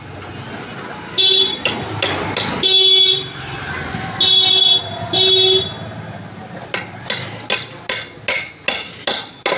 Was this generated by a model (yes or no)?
no